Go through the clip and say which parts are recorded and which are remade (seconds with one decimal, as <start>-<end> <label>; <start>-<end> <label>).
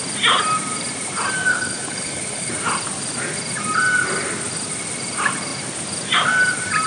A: 0.0-1.5 recorded; 1.5-2.5 remade; 2.5-6.9 recorded